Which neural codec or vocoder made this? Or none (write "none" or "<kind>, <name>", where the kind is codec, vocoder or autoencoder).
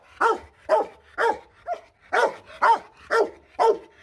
none